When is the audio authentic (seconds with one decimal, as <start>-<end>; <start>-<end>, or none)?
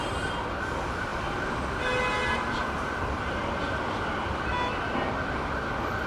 0.0-2.6; 4.5-6.1